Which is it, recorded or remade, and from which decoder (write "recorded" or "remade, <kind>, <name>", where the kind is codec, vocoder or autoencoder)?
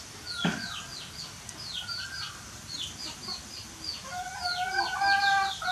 recorded